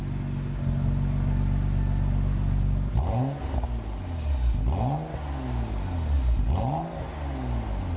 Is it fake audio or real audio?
real